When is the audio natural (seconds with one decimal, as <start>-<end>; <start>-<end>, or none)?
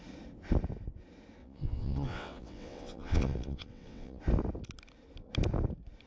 0.0-1.4; 4.2-6.1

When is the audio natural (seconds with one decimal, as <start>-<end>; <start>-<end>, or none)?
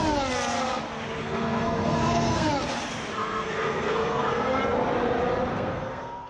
0.0-1.2; 2.5-3.2; 4.6-5.5